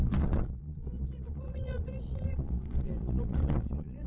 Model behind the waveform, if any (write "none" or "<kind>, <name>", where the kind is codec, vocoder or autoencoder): vocoder, Vocos